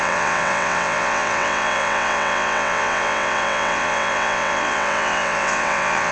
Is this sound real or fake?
fake